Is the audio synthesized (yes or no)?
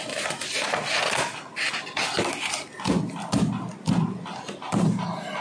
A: no